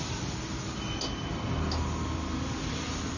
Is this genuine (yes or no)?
yes